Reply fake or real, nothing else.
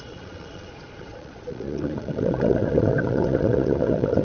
fake